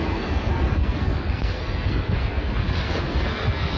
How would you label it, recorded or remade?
remade